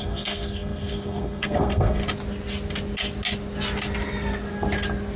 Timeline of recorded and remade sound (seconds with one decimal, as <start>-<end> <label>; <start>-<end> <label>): 0.0-2.0 remade; 2.0-5.2 recorded